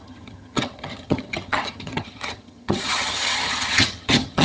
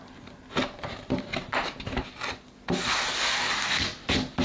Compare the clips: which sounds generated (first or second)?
first